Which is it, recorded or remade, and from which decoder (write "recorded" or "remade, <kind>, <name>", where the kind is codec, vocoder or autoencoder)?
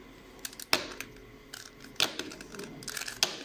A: recorded